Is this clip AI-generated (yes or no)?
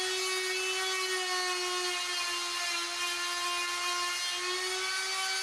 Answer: no